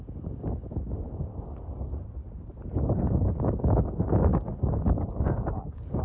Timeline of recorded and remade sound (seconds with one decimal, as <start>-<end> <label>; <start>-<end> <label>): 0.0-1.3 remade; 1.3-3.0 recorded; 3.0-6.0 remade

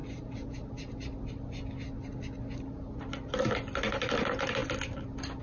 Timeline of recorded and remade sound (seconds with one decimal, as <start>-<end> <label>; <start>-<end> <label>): 0.0-5.4 recorded

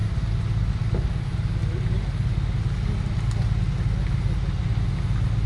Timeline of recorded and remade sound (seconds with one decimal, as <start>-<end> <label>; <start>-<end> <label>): 0.0-5.5 recorded

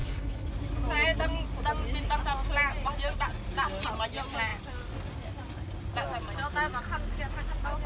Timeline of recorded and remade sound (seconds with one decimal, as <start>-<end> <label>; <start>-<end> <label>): 0.0-0.5 remade; 0.5-7.9 recorded

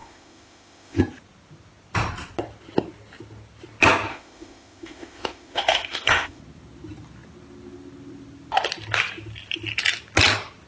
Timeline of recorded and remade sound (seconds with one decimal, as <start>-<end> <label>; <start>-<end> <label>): 0.0-1.0 remade; 1.0-4.1 recorded; 4.1-6.4 remade; 6.4-10.7 recorded

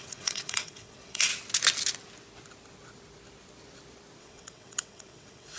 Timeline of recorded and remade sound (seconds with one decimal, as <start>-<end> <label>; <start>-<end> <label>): 0.0-1.3 remade; 1.3-4.2 recorded; 4.2-5.6 remade

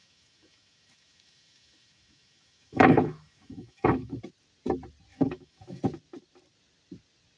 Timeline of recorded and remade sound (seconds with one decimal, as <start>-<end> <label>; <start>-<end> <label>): 0.0-4.2 remade; 4.2-5.1 recorded; 5.1-5.8 remade; 5.8-7.4 recorded

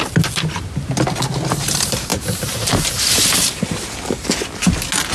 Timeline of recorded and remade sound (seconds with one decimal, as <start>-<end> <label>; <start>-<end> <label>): 0.0-2.1 recorded; 2.1-2.9 remade; 2.9-5.1 recorded